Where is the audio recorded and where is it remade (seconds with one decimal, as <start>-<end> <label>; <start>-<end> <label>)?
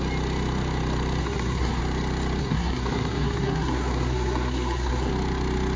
0.0-1.2 recorded; 1.2-1.8 remade; 1.8-2.4 recorded; 2.4-5.1 remade; 5.1-5.8 recorded